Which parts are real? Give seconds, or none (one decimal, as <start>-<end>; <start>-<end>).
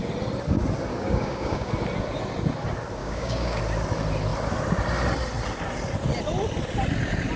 0.0-0.9; 1.7-3.0; 3.6-7.4